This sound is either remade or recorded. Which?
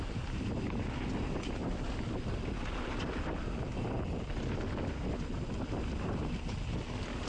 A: recorded